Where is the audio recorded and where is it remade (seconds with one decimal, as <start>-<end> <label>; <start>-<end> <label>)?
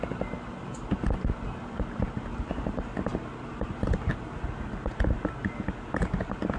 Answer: 0.0-6.6 recorded